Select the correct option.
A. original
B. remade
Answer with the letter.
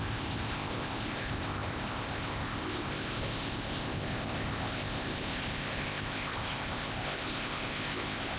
B